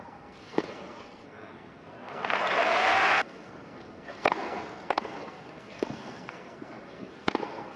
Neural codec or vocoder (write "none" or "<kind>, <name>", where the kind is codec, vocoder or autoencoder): codec, SNAC